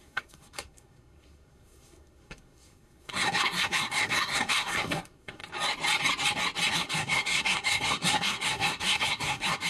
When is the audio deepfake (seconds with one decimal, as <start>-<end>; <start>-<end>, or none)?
0.0-5.4; 6.7-9.7